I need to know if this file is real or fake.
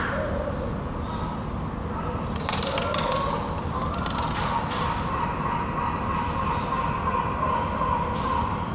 real